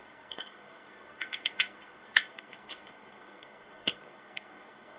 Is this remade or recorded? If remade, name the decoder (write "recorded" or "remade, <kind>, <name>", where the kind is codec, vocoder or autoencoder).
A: remade, codec, SNAC